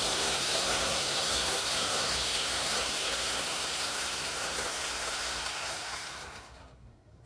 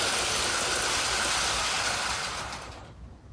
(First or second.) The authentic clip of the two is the second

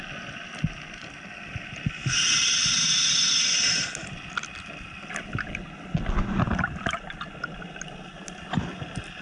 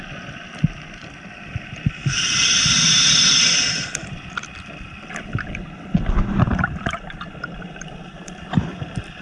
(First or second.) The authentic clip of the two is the first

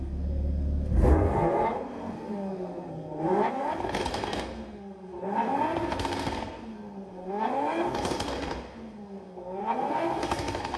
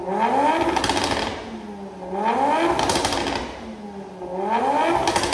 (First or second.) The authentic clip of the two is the second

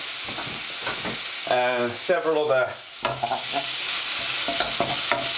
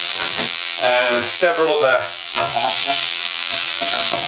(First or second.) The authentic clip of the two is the first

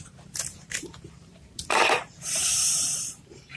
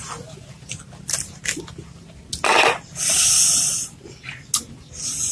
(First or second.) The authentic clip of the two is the second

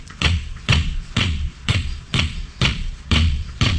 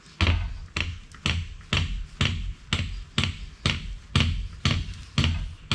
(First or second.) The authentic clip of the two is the second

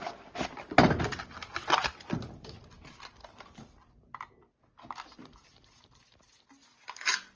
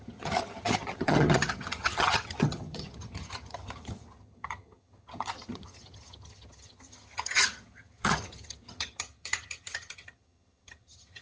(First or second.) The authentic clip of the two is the first